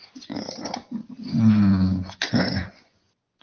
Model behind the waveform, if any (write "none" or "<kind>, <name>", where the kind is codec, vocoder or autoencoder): vocoder, Vocos